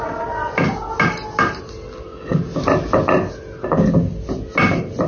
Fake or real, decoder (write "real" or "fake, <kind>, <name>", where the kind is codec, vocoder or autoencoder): real